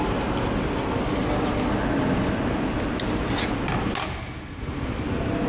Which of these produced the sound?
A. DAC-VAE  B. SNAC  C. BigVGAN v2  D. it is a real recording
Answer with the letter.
D